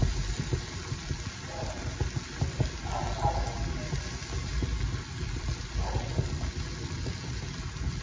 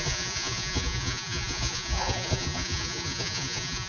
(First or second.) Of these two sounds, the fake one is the second